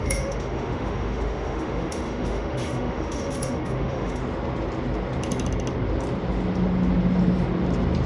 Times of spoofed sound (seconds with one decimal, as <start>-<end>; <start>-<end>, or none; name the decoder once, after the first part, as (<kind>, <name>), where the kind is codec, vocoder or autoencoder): 0.0-4.2 (autoencoder, DAC-VAE)